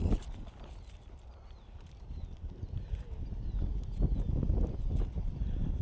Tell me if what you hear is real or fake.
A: real